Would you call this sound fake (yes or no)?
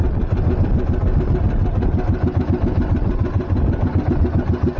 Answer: no